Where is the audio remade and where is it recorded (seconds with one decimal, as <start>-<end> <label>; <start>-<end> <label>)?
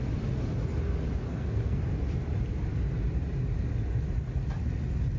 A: 0.0-1.3 recorded; 1.3-1.8 remade; 1.8-5.2 recorded